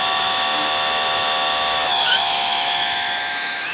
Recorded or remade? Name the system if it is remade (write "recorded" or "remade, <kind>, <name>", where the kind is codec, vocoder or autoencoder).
remade, autoencoder, DAC-VAE